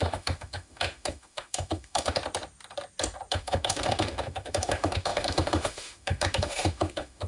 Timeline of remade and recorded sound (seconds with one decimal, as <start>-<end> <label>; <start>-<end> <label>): 0.0-2.2 remade; 2.2-3.3 recorded; 3.3-7.3 remade